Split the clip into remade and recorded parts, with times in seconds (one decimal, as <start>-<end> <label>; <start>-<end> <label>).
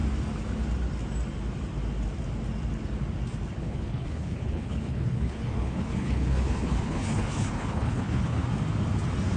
0.0-3.6 recorded; 3.6-8.4 remade; 8.4-9.4 recorded